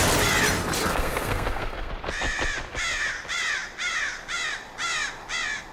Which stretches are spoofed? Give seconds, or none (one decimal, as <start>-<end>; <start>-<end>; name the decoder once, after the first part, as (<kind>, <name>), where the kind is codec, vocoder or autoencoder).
0.9-1.9 (codec, SNAC)